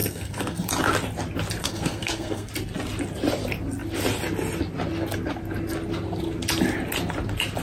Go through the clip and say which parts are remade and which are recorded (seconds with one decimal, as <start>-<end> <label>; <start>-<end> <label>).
0.0-0.7 remade; 0.7-1.6 recorded; 1.6-2.5 remade; 2.5-7.6 recorded